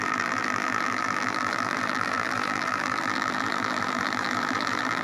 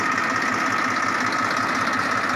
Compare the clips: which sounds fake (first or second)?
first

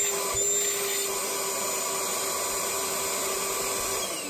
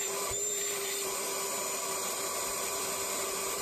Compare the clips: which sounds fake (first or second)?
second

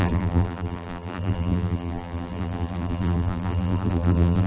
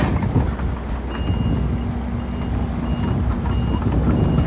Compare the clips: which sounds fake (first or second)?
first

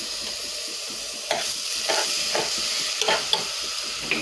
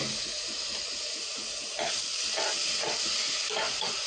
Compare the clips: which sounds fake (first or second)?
second